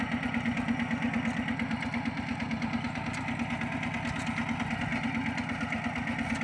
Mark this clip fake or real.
real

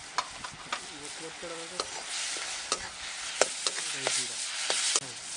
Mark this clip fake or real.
real